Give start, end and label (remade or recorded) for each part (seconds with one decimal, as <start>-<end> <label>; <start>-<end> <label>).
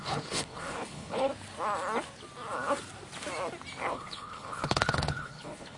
0.0-1.3 remade; 1.3-3.9 recorded; 3.9-5.8 remade